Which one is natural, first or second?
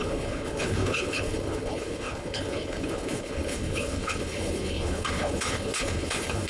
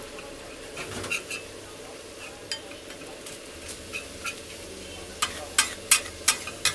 second